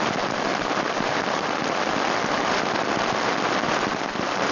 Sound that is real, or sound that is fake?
fake